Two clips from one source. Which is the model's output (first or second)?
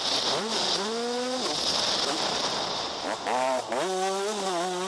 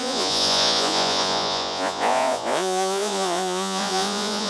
second